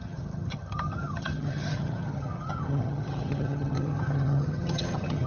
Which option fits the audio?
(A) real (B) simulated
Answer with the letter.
B